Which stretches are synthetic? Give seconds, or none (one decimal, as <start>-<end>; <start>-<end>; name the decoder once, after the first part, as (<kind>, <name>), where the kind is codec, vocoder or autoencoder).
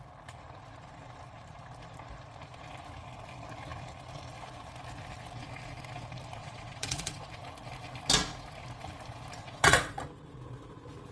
6.4-7.3 (vocoder, WaveNeXt); 9.4-10.0